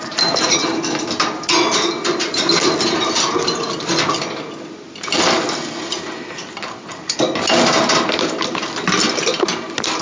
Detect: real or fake real